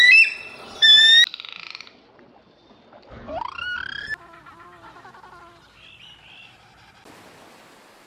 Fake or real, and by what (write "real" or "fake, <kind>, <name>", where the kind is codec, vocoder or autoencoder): real